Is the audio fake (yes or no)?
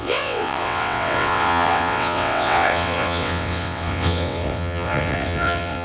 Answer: yes